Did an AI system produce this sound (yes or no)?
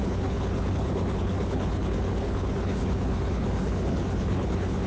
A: yes